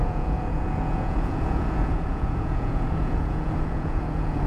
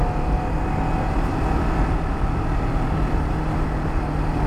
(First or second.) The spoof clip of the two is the first